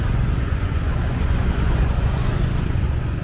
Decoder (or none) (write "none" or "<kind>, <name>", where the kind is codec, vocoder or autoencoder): vocoder, Vocos